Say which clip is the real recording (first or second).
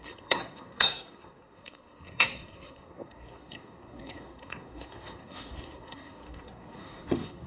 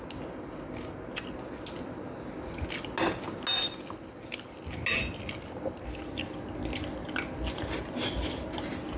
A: second